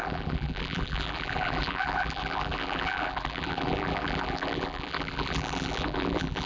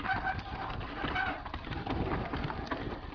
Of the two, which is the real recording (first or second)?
second